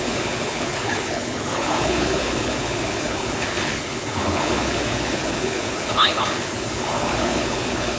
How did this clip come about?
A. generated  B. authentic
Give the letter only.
A